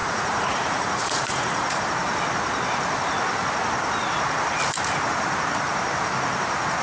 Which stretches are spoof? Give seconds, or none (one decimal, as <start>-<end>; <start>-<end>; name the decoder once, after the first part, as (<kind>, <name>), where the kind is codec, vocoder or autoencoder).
0.0-1.8 (vocoder, Vocos)

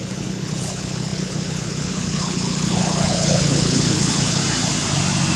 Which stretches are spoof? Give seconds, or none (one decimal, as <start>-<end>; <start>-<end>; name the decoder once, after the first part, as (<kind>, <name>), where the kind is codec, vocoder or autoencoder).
0.0-4.4 (codec, HILCodec)

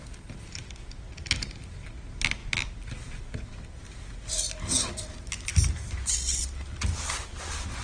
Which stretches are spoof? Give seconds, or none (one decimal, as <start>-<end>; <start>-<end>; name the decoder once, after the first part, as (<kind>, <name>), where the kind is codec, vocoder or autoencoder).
none

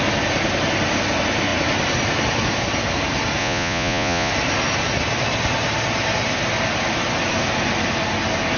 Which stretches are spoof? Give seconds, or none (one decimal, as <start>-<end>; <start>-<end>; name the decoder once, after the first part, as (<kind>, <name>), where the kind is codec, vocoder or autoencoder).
3.4-4.3 (vocoder, Vocos)

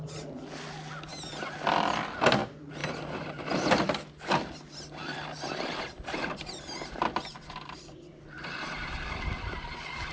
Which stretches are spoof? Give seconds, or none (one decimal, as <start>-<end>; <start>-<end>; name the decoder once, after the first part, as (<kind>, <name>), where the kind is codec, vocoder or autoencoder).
1.1-2.2 (vocoder, BigVGAN v2); 2.8-4.3; 5.0-9.1